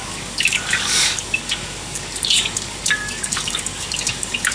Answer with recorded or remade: remade